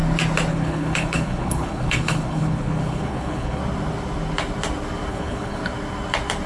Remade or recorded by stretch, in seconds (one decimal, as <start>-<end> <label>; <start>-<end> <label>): 0.0-0.5 recorded; 0.5-3.6 remade; 3.6-5.1 recorded; 5.1-5.6 remade; 5.6-6.5 recorded

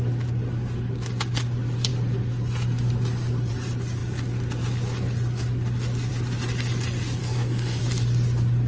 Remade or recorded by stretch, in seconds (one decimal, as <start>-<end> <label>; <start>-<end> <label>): 0.0-7.2 recorded; 7.2-7.8 remade; 7.8-8.7 recorded

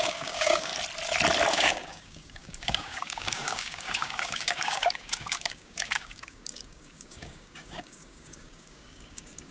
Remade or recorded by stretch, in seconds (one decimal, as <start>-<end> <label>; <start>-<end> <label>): 0.0-0.7 remade; 0.7-1.5 recorded; 1.5-9.5 remade

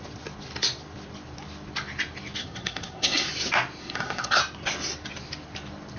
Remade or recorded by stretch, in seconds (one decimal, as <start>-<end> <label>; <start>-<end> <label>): 0.0-2.4 recorded; 2.4-3.3 remade; 3.3-3.8 recorded; 3.8-4.4 remade; 4.4-6.0 recorded

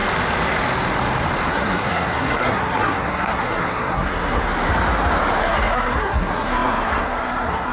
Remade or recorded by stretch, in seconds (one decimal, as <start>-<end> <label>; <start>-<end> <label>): 0.0-1.5 recorded; 1.5-4.4 remade; 4.4-5.4 recorded; 5.4-7.7 remade

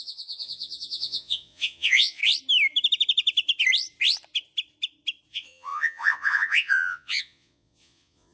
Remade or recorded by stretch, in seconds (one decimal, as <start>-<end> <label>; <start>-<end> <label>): 0.0-2.2 remade; 2.2-5.3 recorded; 5.3-8.3 remade

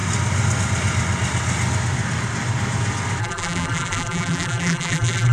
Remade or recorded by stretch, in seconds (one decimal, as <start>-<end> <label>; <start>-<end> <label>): 0.0-3.2 recorded; 3.2-5.3 remade

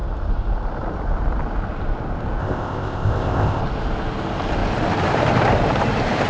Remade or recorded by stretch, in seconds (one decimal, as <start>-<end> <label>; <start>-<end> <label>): 0.0-2.4 recorded; 2.4-3.6 remade; 3.6-6.3 recorded